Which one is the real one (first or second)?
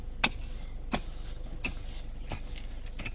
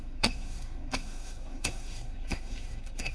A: first